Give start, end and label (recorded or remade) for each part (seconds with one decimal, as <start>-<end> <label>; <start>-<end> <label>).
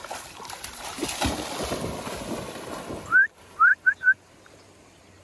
0.0-5.2 recorded